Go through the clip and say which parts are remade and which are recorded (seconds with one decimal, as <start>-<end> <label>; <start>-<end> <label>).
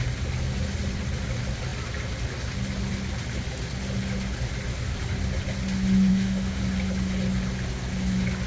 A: 0.0-6.1 recorded; 6.1-6.6 remade; 6.6-8.5 recorded